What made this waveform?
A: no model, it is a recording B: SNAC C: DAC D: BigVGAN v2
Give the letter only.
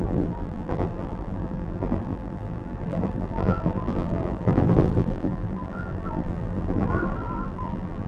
D